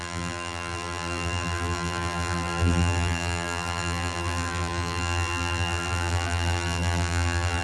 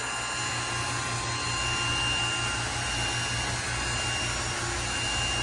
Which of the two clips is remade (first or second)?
first